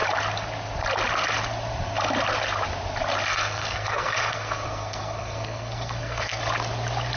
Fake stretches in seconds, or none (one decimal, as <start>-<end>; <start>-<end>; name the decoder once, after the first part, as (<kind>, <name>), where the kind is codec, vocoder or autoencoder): 3.3-6.4 (codec, SNAC)

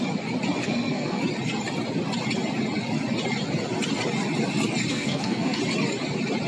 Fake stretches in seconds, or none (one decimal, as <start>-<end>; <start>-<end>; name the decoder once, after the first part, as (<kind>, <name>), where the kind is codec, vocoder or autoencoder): 0.6-1.2 (codec, SNAC); 4.9-5.6

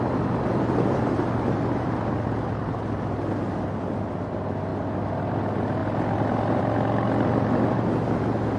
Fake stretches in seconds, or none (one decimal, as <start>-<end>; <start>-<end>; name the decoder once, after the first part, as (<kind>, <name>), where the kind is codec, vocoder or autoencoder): 0.5-2.1 (vocoder, BigVGAN v2)